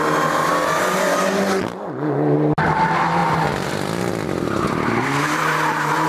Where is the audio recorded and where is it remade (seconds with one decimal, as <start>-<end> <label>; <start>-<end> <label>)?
0.0-6.1 recorded